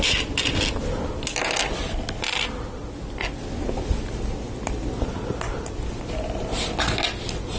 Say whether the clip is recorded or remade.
recorded